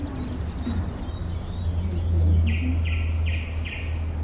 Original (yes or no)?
yes